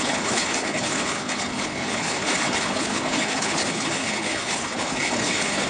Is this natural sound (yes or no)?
no